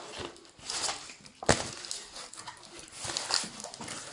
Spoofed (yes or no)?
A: no